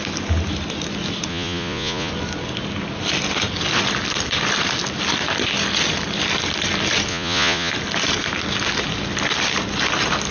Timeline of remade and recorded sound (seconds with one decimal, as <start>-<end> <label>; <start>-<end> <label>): 0.0-1.3 recorded; 1.3-2.1 remade; 2.1-7.1 recorded; 7.1-7.7 remade; 7.7-10.3 recorded